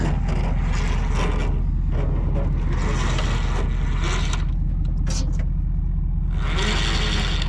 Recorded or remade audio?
recorded